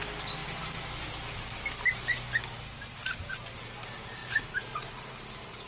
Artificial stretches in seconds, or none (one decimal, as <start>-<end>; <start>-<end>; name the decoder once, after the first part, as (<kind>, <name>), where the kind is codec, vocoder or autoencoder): none